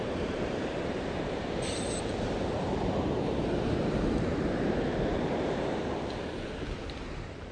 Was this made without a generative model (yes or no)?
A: no